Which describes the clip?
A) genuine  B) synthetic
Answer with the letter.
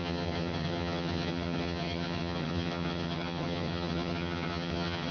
B